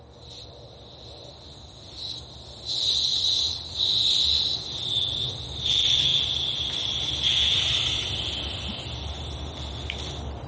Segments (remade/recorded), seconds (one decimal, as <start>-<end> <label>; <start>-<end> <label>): 0.0-3.1 recorded; 3.1-3.7 remade; 3.7-10.5 recorded